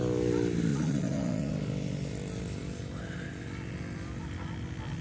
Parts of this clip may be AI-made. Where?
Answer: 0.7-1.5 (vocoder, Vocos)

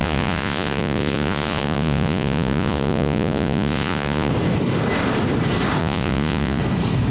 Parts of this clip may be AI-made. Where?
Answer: 0.0-4.3 (vocoder, Vocos); 5.8-6.6

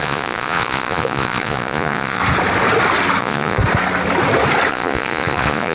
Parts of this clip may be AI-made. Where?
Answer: 0.0-2.2 (vocoder, Vocos); 3.2-3.6; 4.7-5.7

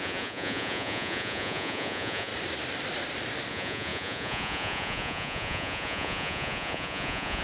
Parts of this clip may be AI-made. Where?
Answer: 0.0-2.3 (vocoder, Vocos); 3.5-7.4

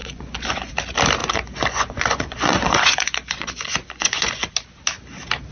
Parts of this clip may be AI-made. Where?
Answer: 0.0-0.7 (vocoder, Vocos); 1.2-4.5